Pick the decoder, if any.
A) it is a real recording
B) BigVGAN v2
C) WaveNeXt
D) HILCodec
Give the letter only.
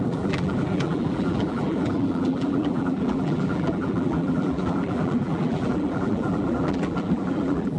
B